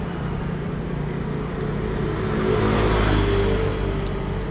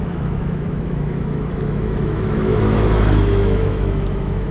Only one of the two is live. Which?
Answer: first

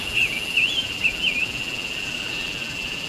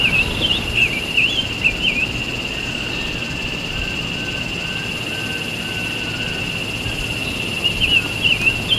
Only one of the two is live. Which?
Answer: second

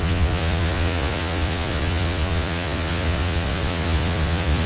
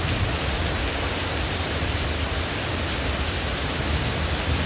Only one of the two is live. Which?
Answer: second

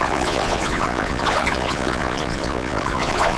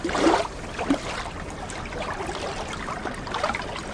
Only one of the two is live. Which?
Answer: second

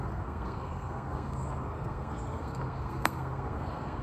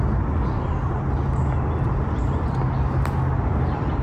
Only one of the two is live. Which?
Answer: second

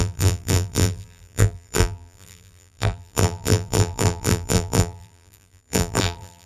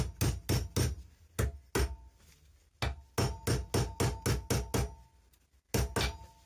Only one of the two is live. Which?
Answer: second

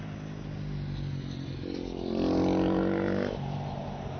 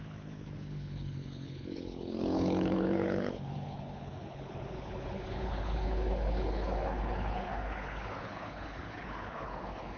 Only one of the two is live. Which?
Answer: first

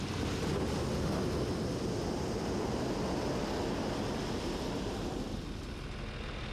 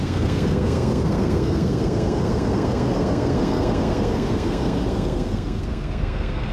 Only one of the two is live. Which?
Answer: first